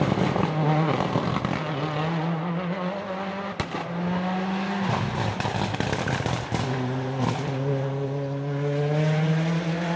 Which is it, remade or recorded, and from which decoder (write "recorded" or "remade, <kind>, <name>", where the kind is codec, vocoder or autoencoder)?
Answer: recorded